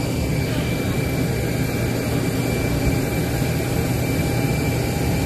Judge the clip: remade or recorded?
recorded